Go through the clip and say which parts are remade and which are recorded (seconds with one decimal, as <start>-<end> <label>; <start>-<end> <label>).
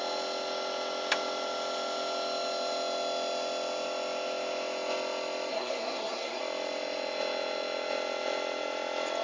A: 0.0-5.5 recorded; 5.5-6.4 remade; 6.4-9.2 recorded